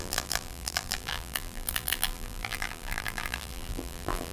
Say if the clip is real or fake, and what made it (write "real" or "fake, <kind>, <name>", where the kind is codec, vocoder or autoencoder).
fake, vocoder, BigVGAN v2